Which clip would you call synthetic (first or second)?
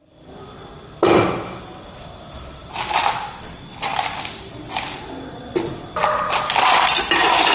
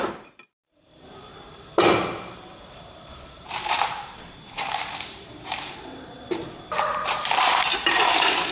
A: second